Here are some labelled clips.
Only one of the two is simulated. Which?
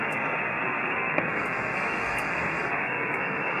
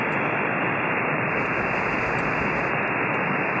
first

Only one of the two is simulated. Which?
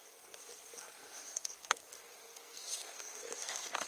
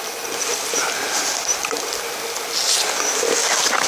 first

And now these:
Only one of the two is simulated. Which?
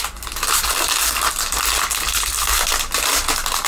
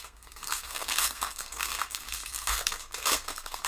second